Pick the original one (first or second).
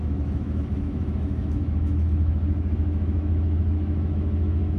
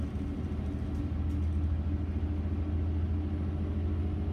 second